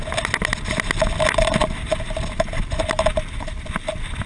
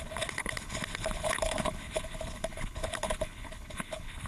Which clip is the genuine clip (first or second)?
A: first